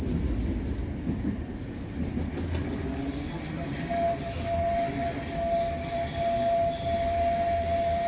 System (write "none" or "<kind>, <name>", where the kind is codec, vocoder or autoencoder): none